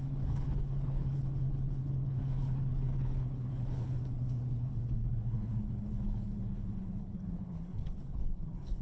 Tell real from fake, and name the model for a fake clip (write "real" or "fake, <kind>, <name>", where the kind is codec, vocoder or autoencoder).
fake, codec, HILCodec